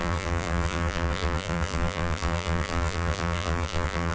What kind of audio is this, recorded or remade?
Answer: remade